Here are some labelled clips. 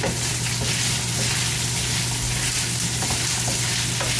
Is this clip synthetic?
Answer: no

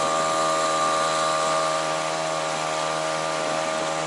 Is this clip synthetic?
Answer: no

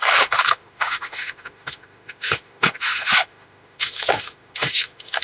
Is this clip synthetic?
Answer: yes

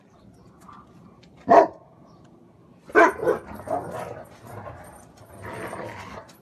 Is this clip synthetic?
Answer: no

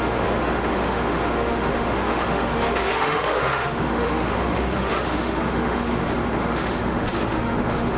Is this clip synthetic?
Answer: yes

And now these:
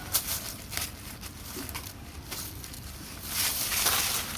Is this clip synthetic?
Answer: no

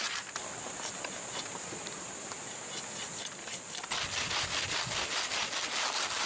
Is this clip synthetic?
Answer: no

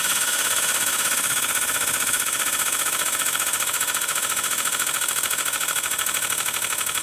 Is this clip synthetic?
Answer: yes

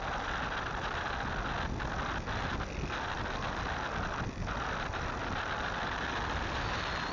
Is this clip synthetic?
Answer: no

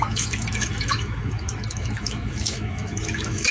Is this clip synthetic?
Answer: yes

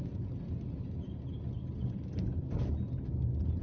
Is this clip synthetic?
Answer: no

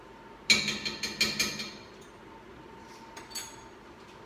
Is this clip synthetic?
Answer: no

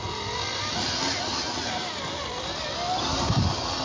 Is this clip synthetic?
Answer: no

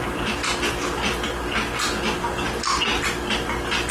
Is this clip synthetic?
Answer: no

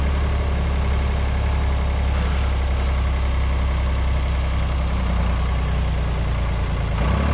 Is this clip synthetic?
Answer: no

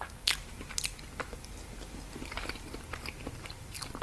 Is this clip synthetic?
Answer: no